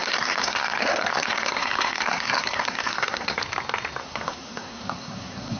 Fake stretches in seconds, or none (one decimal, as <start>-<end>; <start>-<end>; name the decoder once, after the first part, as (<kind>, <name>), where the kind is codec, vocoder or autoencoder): 0.0-3.4 (codec, SNAC); 4.0-5.6